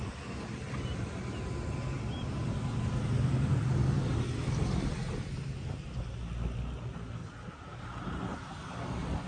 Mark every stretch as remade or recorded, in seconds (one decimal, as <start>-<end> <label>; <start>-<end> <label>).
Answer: 0.0-2.4 recorded; 2.4-6.0 remade; 6.0-7.2 recorded; 7.2-7.8 remade; 7.8-9.3 recorded